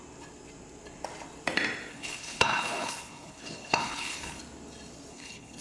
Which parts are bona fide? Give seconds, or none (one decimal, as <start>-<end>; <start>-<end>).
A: 0.0-1.9; 4.4-5.1